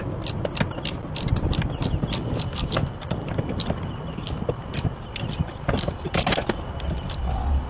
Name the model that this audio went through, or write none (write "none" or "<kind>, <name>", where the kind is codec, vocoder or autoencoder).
none